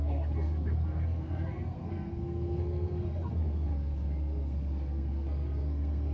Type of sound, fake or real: fake